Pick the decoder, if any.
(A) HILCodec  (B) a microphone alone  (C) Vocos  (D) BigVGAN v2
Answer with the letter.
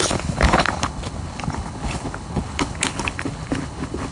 A